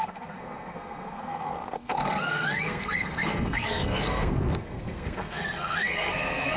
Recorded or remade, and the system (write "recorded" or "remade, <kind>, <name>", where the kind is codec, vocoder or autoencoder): remade, codec, SNAC